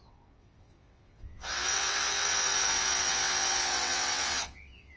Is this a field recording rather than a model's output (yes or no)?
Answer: no